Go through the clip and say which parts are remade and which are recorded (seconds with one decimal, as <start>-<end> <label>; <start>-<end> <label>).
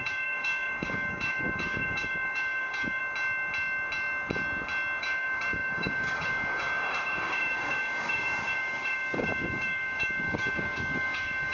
0.0-3.0 remade; 3.0-5.0 recorded; 5.0-11.5 remade